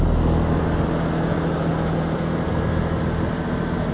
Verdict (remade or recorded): recorded